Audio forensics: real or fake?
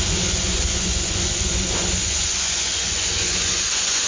fake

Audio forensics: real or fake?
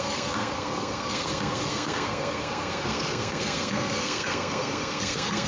fake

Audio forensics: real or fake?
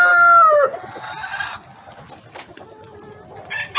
real